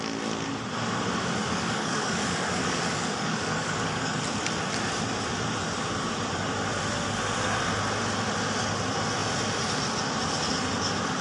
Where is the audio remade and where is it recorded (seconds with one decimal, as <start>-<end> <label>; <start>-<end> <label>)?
0.0-1.4 recorded; 1.4-4.2 remade; 4.2-11.2 recorded